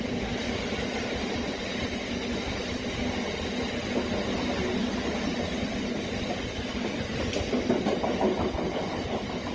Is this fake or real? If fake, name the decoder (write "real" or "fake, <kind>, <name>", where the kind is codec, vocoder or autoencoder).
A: real